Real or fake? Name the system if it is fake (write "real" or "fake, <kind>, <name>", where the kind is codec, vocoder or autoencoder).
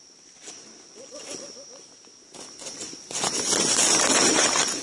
real